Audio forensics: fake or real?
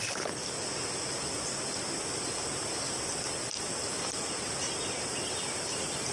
real